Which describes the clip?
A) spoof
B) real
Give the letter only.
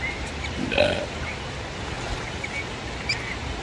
B